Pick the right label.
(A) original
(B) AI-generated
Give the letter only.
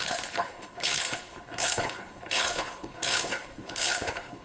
B